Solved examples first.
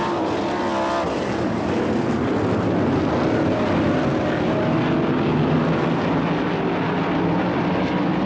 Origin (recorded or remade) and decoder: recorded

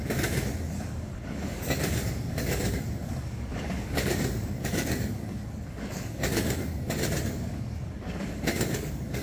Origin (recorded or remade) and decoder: remade, codec, DAC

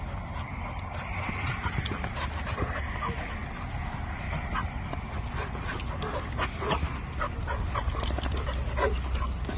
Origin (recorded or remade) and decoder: recorded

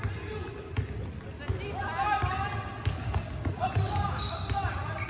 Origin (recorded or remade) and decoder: recorded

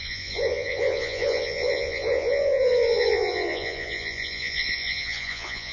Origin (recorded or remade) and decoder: remade, vocoder, Vocos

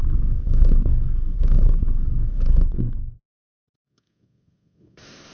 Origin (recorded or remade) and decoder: remade, codec, SNAC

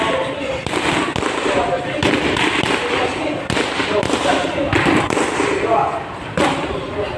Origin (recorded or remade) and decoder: recorded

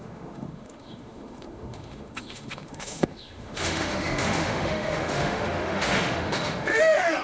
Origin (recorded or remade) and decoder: remade, autoencoder, DAC-VAE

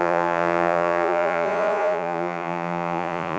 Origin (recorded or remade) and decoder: remade, vocoder, Vocos